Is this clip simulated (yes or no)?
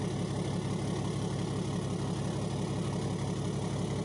no